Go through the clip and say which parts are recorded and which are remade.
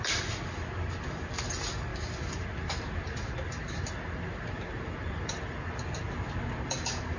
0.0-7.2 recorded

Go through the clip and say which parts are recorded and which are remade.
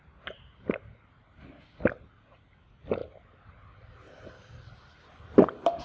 0.0-5.8 recorded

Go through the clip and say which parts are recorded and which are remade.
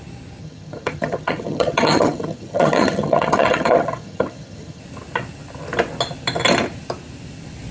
0.0-0.4 recorded; 0.4-4.8 remade; 4.8-7.7 recorded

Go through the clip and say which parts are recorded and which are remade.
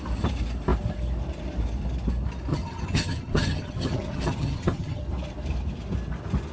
0.0-2.5 recorded; 2.5-5.0 remade; 5.0-6.5 recorded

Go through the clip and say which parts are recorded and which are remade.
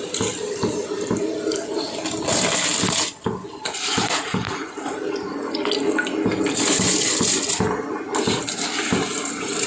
0.0-9.7 recorded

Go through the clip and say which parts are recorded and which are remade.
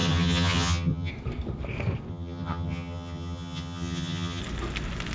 0.0-1.1 remade; 1.1-2.1 recorded; 2.1-4.4 remade; 4.4-5.1 recorded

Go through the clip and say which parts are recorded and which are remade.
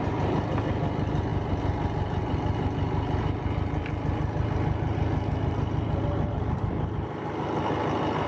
0.0-8.3 recorded